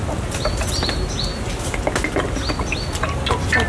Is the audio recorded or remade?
recorded